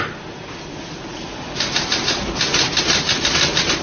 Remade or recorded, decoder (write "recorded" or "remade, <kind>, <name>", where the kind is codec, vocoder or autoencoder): recorded